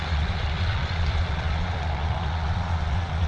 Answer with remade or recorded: remade